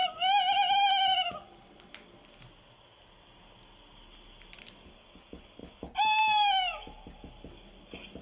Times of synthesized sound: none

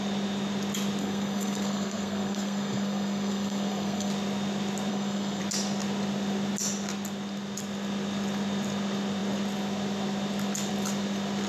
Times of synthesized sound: 1.0-4.1; 4.9-5.4

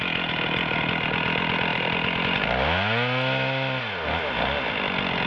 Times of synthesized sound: none

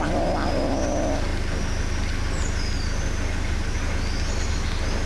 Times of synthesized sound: none

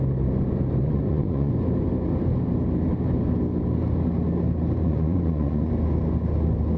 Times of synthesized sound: 0.8-1.5; 4.8-5.7

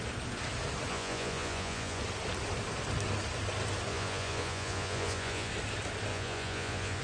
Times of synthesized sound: 0.9-2.0; 3.9-5.5; 6.1-7.0